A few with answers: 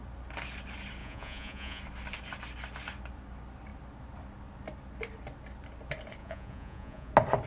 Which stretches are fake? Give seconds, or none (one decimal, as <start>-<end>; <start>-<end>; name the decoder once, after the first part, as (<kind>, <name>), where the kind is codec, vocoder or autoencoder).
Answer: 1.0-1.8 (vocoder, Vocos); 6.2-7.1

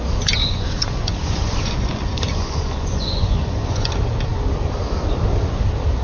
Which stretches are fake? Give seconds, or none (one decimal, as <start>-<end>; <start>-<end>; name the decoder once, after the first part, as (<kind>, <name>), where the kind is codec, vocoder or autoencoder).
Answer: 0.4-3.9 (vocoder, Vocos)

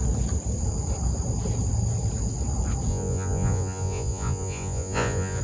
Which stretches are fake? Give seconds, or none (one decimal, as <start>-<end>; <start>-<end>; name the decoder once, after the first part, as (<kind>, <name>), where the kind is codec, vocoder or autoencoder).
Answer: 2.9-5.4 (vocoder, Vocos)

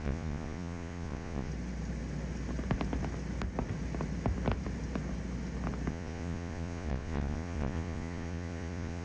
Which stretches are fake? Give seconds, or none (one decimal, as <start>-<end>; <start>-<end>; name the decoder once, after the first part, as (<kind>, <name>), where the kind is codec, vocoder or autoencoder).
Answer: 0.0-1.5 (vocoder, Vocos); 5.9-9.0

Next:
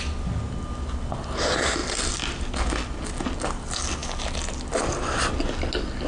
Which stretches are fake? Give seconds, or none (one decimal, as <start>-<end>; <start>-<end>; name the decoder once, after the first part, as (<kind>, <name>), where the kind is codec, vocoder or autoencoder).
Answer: none

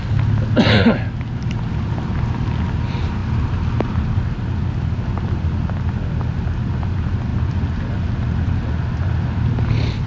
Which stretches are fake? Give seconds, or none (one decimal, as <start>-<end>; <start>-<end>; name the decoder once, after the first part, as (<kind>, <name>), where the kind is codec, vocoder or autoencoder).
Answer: none